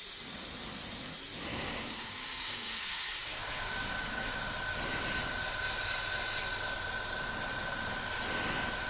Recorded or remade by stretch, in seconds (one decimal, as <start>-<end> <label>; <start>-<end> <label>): 0.0-1.5 recorded; 1.5-4.5 remade; 4.5-8.9 recorded